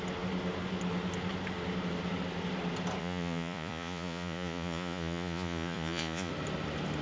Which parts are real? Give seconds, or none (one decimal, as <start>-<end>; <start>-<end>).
0.0-3.0; 6.3-7.0